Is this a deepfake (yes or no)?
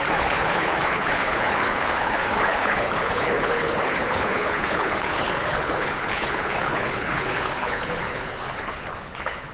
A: yes